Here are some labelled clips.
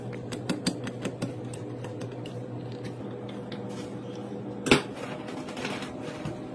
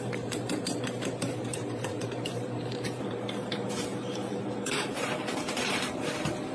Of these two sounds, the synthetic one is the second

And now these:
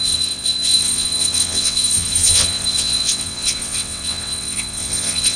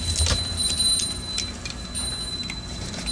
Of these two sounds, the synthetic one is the first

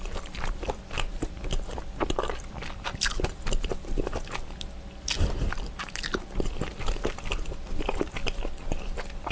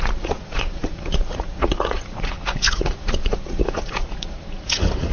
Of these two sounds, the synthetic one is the second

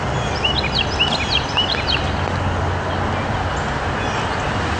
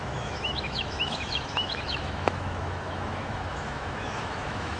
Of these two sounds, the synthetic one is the second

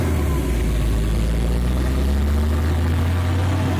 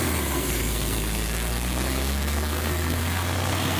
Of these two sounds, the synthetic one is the second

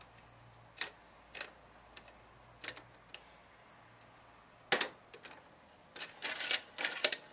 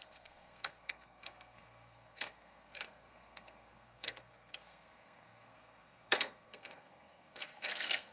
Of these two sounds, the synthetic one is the second